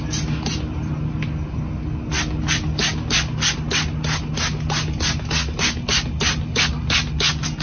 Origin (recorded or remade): recorded